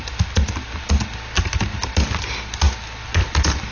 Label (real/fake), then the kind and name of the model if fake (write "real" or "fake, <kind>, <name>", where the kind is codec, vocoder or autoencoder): real